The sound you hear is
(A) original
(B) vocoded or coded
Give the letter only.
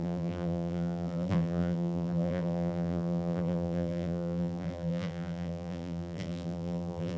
B